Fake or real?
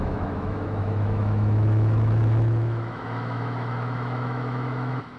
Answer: fake